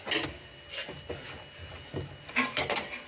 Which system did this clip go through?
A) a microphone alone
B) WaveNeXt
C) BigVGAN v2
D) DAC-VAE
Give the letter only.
A